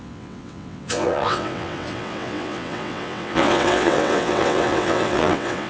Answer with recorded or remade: remade